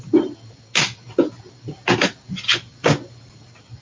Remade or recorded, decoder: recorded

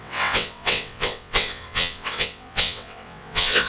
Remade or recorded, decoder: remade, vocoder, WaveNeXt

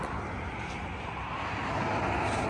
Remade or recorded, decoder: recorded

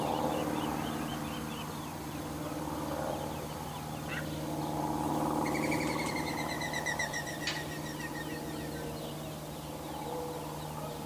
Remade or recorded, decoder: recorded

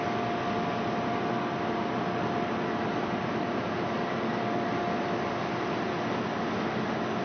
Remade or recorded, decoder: recorded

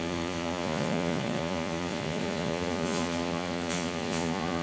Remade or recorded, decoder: remade, vocoder, Vocos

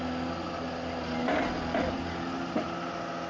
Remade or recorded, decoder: recorded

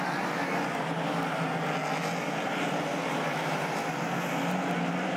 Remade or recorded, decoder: recorded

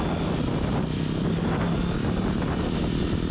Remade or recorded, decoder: recorded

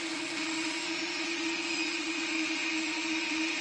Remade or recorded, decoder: remade, vocoder, Vocos